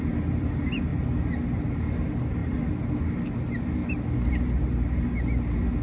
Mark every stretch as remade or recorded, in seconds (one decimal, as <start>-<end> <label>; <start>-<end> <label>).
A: 0.0-0.9 remade; 0.9-1.7 recorded; 1.7-3.8 remade; 3.8-4.3 recorded; 4.3-5.8 remade